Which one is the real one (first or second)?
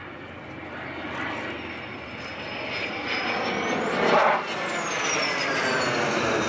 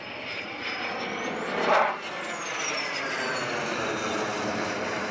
first